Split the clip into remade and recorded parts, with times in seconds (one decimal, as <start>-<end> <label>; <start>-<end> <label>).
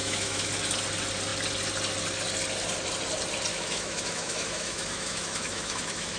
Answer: 0.0-0.5 remade; 0.5-3.5 recorded; 3.5-6.2 remade